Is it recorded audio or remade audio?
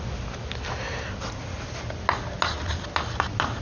recorded